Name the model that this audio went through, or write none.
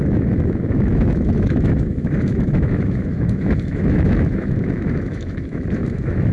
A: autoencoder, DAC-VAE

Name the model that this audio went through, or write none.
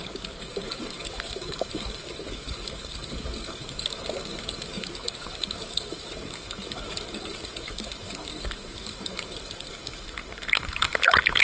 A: codec, DAC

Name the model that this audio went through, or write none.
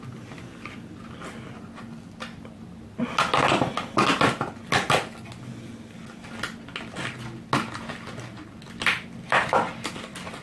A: none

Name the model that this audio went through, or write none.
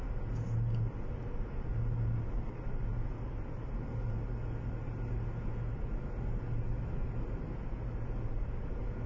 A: none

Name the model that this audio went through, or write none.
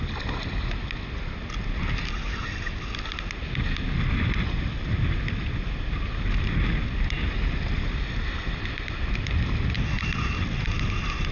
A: none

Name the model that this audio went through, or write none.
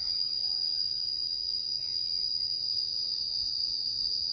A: vocoder, Vocos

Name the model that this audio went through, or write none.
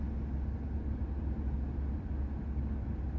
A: none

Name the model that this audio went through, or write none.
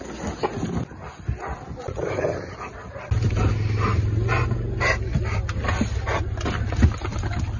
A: none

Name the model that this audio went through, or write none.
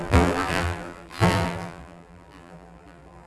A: vocoder, BigVGAN v2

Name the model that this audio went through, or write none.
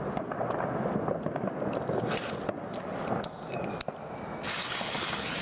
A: none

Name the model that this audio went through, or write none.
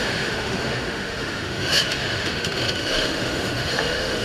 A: autoencoder, DAC-VAE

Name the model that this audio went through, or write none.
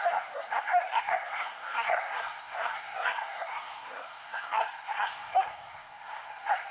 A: codec, SNAC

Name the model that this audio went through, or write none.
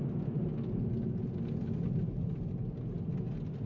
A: none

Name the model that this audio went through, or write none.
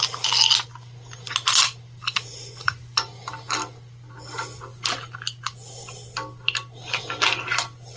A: none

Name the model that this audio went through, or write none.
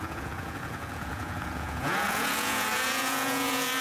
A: vocoder, Vocos